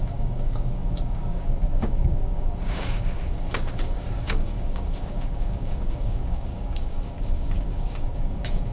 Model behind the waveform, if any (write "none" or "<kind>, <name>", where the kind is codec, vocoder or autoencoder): codec, DAC